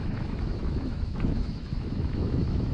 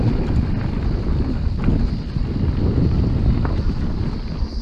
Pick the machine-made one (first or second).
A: first